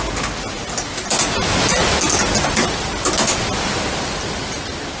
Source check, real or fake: real